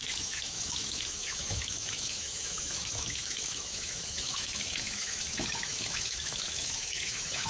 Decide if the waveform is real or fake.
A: fake